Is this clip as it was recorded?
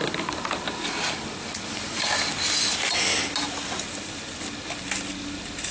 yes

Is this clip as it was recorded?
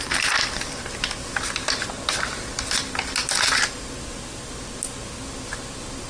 yes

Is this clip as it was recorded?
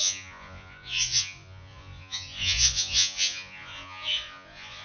no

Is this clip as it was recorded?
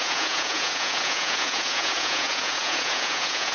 no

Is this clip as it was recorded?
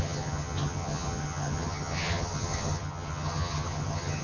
no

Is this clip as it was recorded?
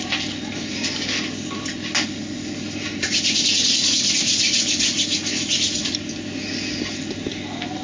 yes